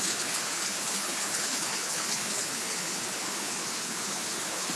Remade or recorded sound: remade